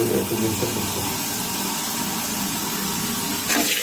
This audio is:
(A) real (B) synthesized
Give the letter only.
A